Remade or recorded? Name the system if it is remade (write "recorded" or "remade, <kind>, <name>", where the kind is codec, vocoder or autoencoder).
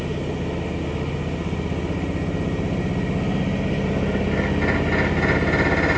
recorded